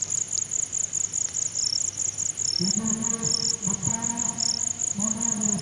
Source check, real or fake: real